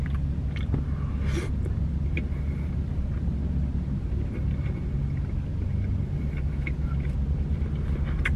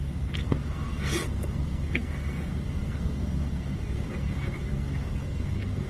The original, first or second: first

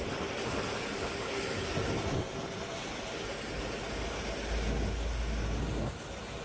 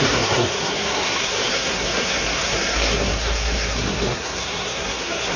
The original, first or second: first